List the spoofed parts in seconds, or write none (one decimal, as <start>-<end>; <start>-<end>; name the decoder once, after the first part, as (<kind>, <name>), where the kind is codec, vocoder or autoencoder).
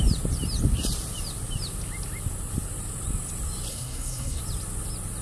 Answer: 3.7-4.4 (codec, SNAC)